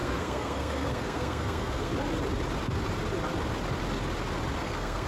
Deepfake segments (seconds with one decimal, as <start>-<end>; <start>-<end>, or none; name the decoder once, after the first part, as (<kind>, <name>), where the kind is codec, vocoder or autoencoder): 0.0-1.9 (codec, SNAC); 4.6-5.1